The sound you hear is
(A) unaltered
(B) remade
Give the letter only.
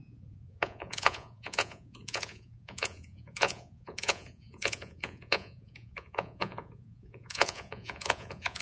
B